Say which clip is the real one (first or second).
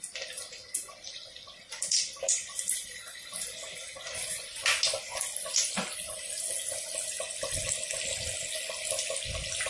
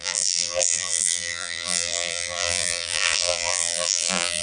first